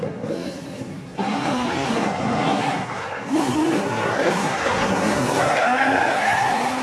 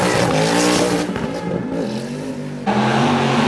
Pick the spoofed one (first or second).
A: first